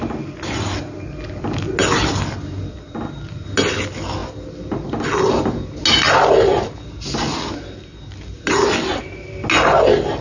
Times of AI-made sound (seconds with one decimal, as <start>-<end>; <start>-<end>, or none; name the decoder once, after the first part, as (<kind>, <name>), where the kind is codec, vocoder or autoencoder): none